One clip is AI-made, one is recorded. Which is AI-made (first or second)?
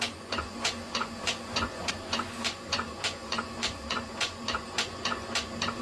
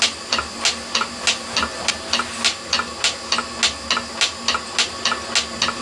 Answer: first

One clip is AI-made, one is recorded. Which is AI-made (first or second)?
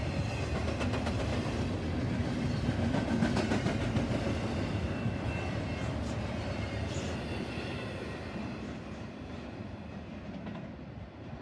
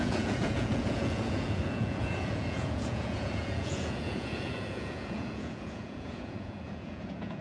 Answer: second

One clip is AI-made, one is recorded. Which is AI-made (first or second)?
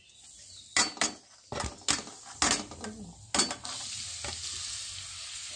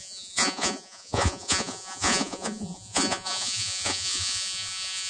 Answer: second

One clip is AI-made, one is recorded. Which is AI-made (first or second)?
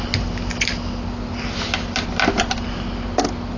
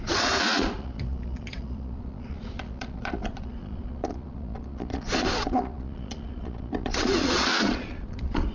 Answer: second